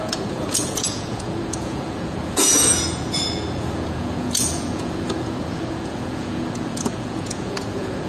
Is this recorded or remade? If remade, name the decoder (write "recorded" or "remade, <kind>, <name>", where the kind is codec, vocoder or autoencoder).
remade, vocoder, Vocos